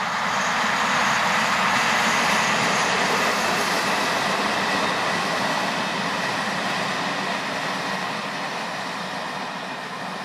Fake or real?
real